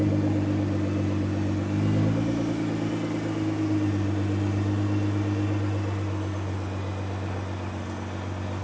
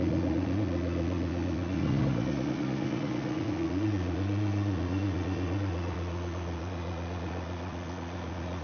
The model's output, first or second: second